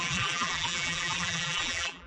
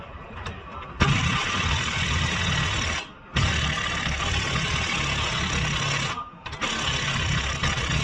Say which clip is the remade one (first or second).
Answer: first